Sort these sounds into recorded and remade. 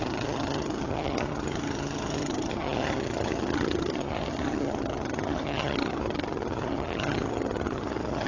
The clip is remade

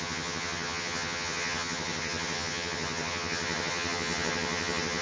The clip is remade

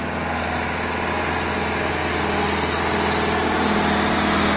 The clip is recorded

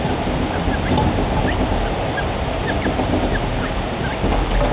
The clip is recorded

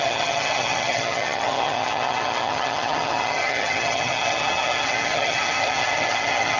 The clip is remade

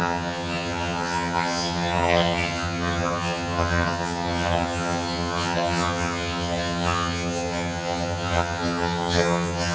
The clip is remade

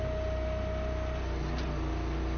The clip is recorded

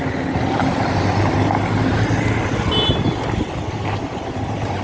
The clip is recorded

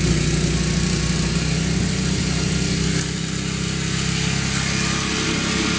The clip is recorded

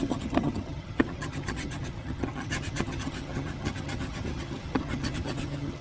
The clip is remade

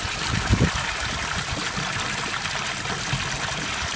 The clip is recorded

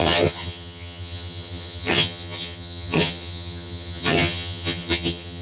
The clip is remade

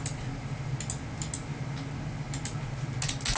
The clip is recorded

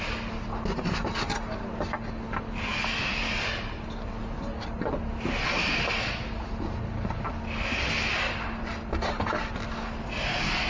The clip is recorded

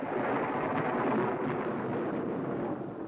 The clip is recorded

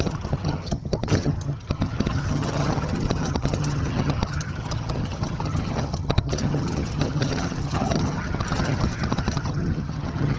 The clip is remade